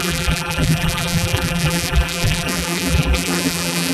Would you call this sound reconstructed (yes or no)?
yes